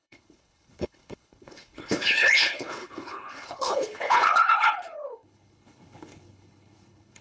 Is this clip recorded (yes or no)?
no